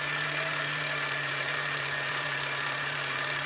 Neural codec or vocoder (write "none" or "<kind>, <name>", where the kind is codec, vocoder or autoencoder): vocoder, BigVGAN v2